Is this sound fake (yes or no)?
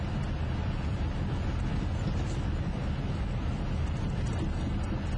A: no